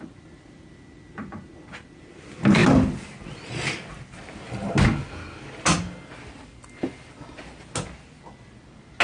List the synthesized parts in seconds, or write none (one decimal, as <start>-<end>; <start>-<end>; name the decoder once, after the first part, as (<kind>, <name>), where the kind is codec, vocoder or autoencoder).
none